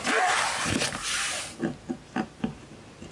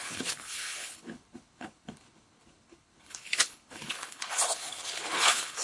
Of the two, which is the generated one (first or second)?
second